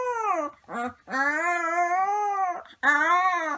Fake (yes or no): no